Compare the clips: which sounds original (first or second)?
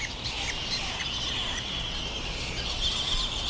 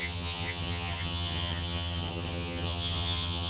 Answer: first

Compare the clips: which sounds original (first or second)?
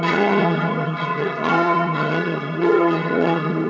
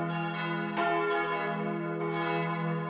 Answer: second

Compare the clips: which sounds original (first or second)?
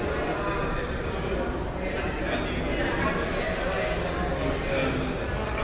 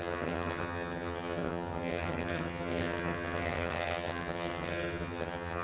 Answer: first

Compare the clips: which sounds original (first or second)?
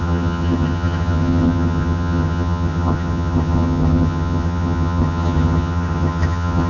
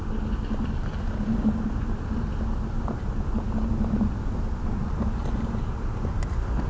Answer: second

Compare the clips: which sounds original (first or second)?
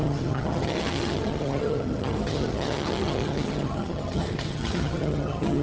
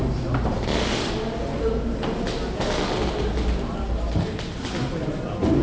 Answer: second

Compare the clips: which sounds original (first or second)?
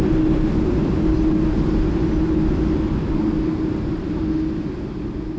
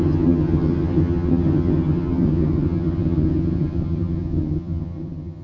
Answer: first